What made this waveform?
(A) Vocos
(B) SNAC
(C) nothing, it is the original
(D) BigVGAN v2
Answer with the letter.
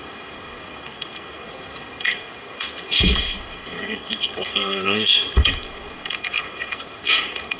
B